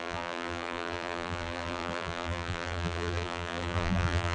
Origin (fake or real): fake